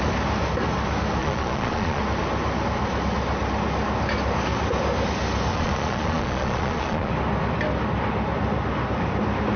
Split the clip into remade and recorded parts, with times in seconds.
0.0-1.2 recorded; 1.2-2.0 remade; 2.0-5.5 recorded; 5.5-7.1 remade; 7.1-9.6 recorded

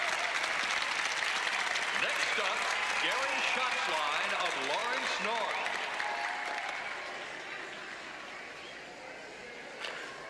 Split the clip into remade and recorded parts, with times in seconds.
0.0-10.3 recorded